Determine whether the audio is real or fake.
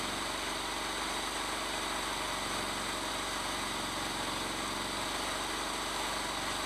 real